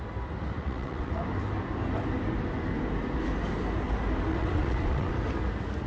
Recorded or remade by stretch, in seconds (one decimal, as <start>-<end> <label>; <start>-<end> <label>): 0.0-0.6 recorded; 0.6-1.2 remade; 1.2-4.3 recorded; 4.3-5.1 remade; 5.1-5.9 recorded